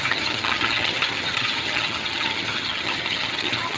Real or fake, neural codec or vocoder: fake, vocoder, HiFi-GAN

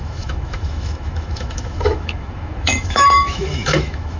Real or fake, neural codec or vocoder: fake, autoencoder, DAC-VAE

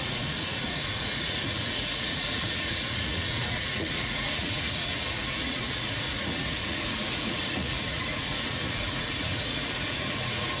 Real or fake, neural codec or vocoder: fake, vocoder, Vocos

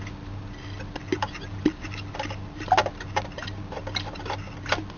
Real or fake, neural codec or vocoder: real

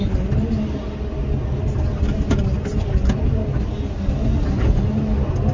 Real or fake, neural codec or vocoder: real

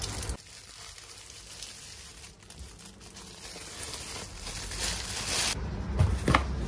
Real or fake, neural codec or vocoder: real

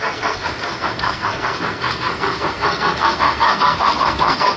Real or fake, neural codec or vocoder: fake, codec, SNAC